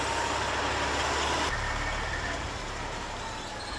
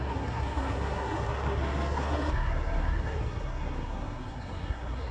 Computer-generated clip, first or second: second